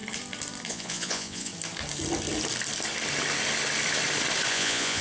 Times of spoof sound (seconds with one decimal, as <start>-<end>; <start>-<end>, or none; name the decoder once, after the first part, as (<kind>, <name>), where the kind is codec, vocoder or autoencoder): 0.7-1.5 (vocoder, Vocos); 4.5-5.0